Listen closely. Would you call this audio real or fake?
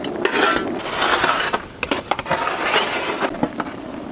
real